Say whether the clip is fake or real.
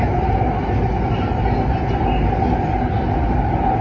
real